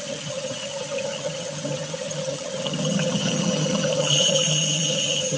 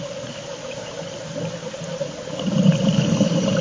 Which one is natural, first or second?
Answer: second